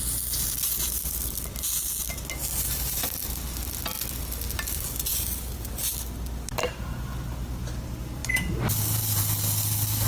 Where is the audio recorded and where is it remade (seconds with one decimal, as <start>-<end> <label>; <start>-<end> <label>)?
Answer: 0.0-10.1 recorded